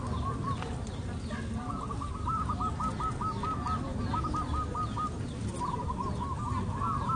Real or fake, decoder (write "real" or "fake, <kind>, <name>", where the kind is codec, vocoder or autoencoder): real